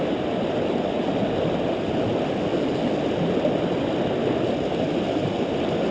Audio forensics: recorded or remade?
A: recorded